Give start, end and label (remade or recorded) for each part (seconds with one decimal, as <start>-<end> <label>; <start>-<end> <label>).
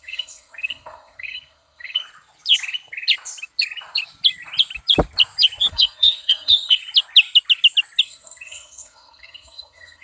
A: 0.0-2.0 remade; 2.0-5.7 recorded; 5.7-6.8 remade; 6.8-8.0 recorded; 8.0-10.0 remade